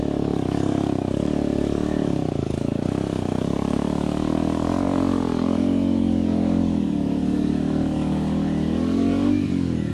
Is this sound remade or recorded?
remade